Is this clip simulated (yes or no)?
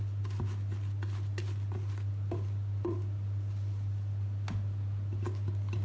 no